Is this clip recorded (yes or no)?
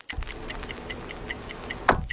yes